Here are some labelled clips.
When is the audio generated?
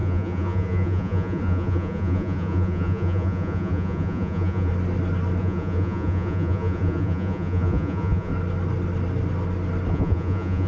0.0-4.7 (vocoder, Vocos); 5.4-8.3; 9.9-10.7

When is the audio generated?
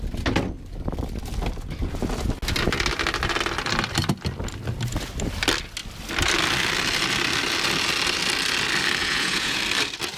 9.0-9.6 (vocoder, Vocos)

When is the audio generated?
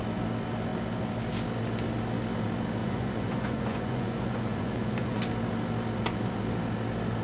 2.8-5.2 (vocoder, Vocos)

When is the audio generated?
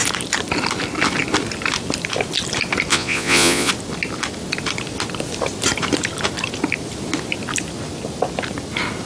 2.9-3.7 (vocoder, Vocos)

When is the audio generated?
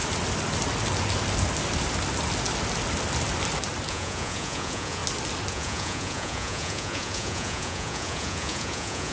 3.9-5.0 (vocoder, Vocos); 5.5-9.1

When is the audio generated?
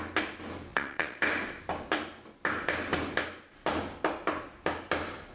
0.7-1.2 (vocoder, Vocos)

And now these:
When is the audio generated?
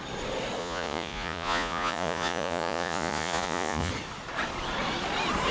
0.6-3.9 (vocoder, Vocos)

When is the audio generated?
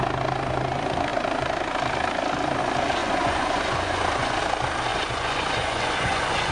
3.0-4.4 (vocoder, Vocos); 4.9-6.5